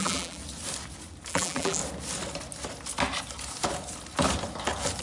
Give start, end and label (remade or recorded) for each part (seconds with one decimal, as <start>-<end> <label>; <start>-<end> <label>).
0.0-0.4 remade; 0.4-1.3 recorded; 1.3-1.8 remade; 1.8-5.0 recorded